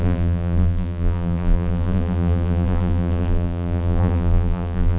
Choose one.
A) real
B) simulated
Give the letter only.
B